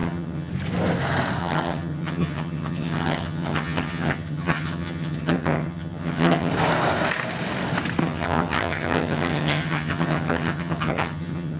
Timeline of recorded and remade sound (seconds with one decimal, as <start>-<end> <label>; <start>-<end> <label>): 0.0-0.5 remade; 0.5-1.4 recorded; 1.4-6.5 remade; 6.5-8.0 recorded; 8.0-11.6 remade